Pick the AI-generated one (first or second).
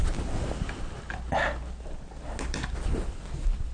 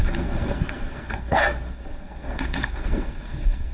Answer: second